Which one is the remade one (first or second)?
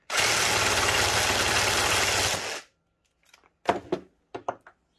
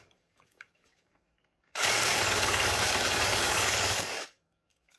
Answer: second